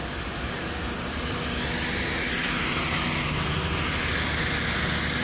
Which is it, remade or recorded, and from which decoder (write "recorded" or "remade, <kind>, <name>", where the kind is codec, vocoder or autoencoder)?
recorded